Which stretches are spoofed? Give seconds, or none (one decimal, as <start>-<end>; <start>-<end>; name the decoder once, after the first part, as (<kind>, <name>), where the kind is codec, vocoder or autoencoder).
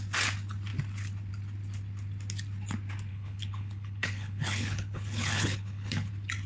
3.1-6.1 (codec, HILCodec)